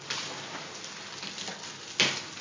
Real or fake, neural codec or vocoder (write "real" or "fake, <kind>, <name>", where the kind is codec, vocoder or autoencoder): real